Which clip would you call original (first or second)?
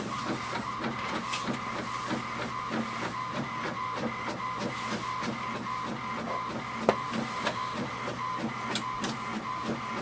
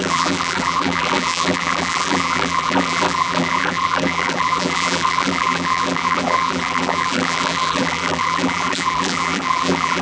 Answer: first